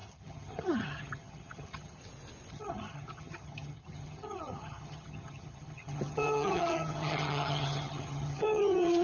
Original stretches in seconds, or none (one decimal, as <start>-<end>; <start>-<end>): 2.0-2.5